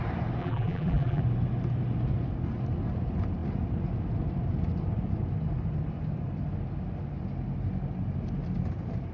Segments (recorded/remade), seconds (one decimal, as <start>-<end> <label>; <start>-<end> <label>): 0.0-0.4 recorded; 0.4-1.2 remade; 1.2-9.1 recorded